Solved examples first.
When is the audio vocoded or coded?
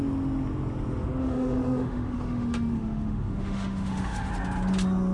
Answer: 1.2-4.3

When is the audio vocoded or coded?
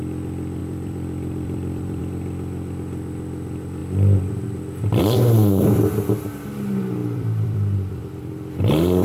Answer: 0.6-2.0; 7.0-8.6